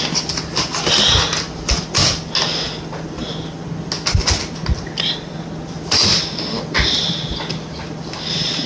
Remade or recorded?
recorded